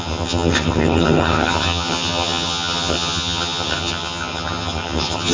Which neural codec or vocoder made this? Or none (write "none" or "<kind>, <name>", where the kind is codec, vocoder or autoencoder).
vocoder, HiFi-GAN